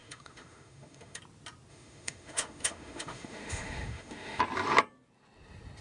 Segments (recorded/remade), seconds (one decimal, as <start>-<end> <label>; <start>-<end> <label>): 0.0-1.2 remade; 1.2-1.7 recorded; 1.7-4.4 remade; 4.4-5.8 recorded